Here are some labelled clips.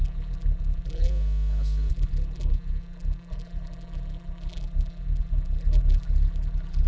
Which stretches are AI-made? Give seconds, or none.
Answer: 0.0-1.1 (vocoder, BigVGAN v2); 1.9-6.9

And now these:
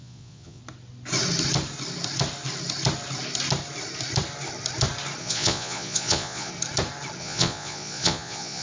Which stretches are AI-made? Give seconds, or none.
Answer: 0.0-0.6 (vocoder, Vocos); 5.2-6.5; 7.2-8.6

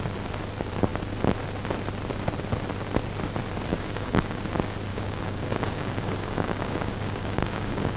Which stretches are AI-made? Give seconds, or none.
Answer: 3.7-4.4 (codec, DAC); 4.9-8.0